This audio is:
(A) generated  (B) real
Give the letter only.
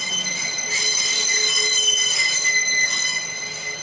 B